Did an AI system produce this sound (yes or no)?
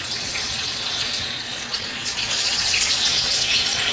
yes